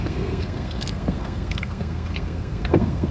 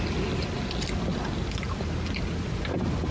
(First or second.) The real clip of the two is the second